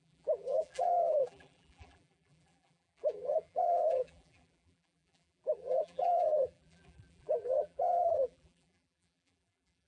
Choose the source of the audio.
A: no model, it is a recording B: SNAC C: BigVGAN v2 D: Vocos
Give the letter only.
C